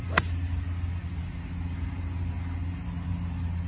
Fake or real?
real